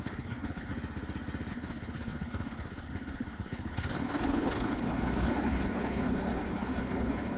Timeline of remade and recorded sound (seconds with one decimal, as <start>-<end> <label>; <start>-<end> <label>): 0.0-0.7 remade; 0.7-1.5 recorded; 1.5-7.4 remade